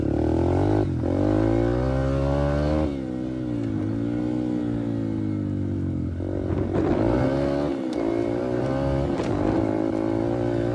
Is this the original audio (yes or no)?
yes